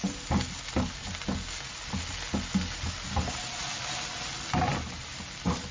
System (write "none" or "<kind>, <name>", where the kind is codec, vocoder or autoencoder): none